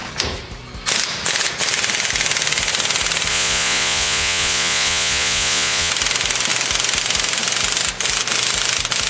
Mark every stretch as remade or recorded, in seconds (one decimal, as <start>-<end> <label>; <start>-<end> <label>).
0.0-3.3 recorded; 3.3-5.9 remade; 5.9-9.1 recorded